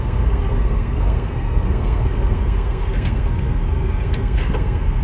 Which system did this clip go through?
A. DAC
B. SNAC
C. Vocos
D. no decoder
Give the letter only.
B